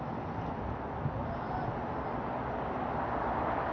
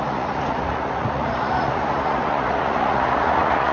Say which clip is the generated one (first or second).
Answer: second